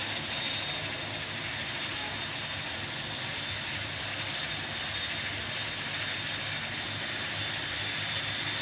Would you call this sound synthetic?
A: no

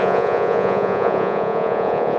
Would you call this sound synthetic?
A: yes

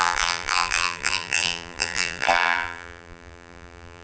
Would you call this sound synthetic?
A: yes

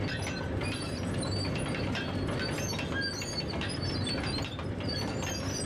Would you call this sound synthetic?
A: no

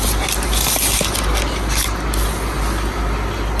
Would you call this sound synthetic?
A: no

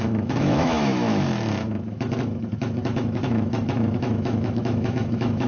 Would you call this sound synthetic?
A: yes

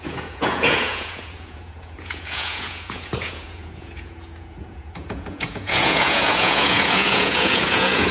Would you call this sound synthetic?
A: yes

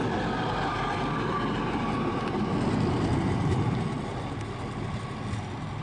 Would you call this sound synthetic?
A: no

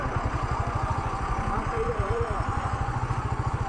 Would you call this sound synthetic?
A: yes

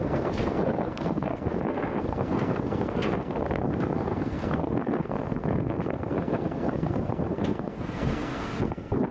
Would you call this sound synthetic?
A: yes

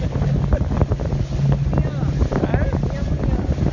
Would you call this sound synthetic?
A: no